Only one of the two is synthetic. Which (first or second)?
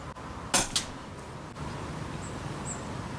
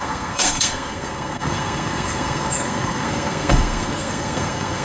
second